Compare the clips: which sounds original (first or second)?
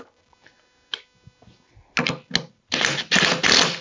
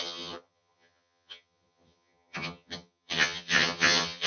first